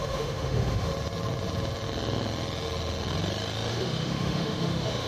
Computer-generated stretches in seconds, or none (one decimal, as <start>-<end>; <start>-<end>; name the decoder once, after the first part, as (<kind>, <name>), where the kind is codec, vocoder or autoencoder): 0.0-0.9 (autoencoder, DAC-VAE); 3.7-5.1